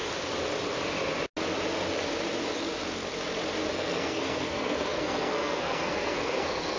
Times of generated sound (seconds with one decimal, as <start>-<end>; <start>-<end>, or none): 3.7-6.8